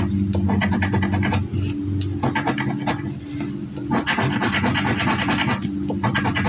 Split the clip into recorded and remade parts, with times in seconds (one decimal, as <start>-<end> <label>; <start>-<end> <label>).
0.0-6.5 recorded